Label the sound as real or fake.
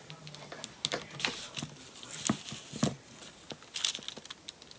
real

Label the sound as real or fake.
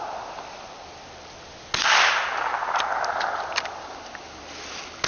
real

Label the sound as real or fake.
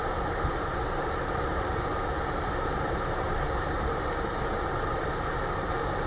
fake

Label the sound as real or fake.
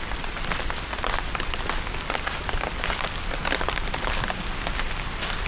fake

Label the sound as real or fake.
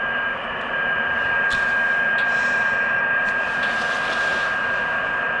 real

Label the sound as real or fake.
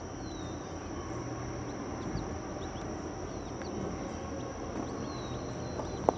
real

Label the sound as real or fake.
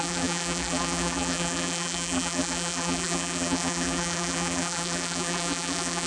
fake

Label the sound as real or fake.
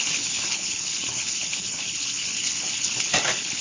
fake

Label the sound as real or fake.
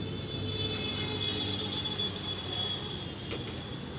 real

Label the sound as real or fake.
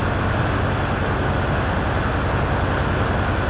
real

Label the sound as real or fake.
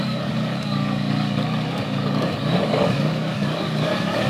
fake